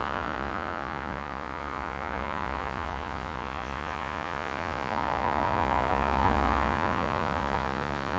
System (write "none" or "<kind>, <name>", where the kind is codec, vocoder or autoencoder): vocoder, Vocos